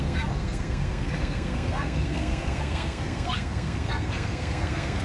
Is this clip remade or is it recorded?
remade